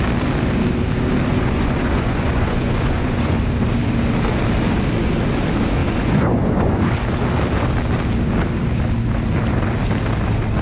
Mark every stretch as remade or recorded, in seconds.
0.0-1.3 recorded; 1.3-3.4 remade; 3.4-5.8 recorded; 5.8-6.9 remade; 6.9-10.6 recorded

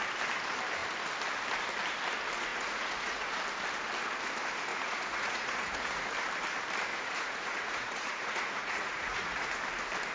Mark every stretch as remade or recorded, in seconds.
0.0-2.5 recorded; 2.5-3.4 remade; 3.4-4.7 recorded; 4.7-6.1 remade; 6.1-6.9 recorded; 6.9-9.5 remade; 9.5-10.1 recorded

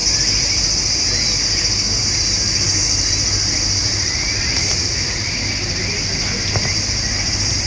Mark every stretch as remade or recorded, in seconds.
0.0-3.8 recorded; 3.8-5.3 remade; 5.3-7.7 recorded

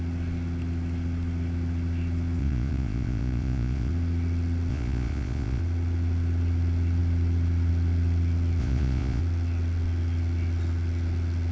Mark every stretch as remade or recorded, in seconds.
0.0-2.4 recorded; 2.4-3.9 remade; 3.9-4.7 recorded; 4.7-5.6 remade; 5.6-8.6 recorded; 8.6-9.2 remade; 9.2-11.5 recorded

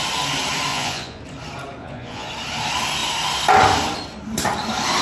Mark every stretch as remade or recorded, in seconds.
0.0-0.7 recorded; 0.7-1.2 remade; 1.2-1.8 recorded; 1.8-2.3 remade; 2.3-5.0 recorded

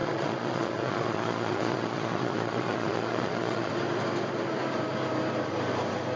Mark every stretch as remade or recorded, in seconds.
0.0-3.7 remade; 3.7-6.2 recorded